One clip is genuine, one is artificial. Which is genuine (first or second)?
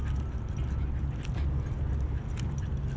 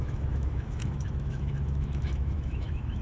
first